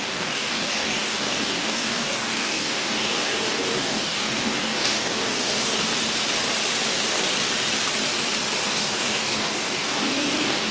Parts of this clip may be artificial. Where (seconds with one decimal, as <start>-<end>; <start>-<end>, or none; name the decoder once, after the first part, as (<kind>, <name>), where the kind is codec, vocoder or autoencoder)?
0.0-5.9 (codec, DAC); 8.6-10.7